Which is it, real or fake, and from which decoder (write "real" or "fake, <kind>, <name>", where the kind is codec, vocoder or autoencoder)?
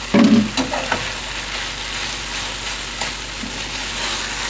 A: real